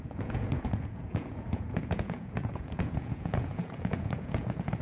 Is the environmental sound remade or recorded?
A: remade